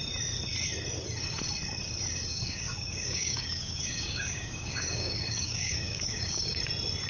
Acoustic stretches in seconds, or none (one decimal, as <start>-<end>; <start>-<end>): 0.0-2.3; 6.6-7.1